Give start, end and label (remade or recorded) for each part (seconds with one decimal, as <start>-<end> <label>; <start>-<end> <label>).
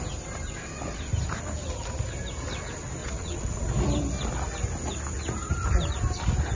0.0-3.0 recorded; 3.0-3.7 remade; 3.7-6.5 recorded